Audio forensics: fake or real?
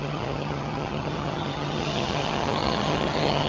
fake